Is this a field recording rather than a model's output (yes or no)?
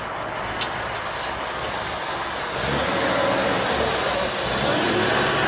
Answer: yes